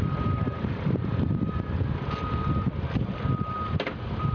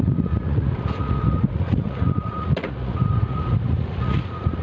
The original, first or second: first